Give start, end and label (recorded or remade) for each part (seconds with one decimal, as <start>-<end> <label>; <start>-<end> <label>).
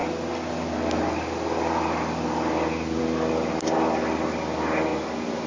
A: 0.0-5.5 recorded